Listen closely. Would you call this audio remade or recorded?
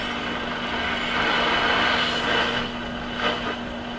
recorded